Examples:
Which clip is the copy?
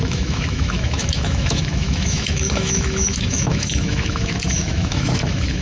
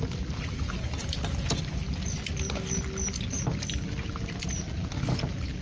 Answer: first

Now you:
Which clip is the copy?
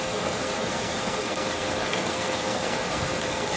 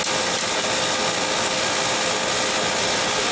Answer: first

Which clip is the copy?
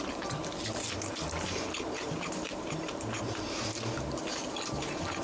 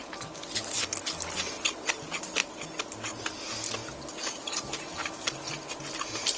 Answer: first